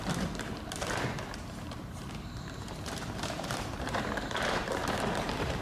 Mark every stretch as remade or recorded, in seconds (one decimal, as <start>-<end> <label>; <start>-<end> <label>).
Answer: 0.0-4.8 remade; 4.8-5.6 recorded